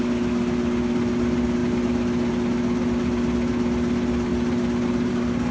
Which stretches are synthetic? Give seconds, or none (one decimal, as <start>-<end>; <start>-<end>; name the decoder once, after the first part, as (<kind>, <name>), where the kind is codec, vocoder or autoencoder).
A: none